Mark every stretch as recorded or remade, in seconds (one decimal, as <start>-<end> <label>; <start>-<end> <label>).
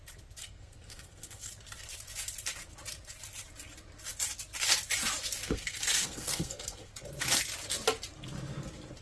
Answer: 0.0-0.4 recorded; 0.4-1.5 remade; 1.5-5.4 recorded; 5.4-6.9 remade; 6.9-9.0 recorded